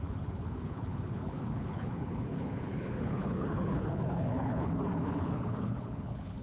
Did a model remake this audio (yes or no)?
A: yes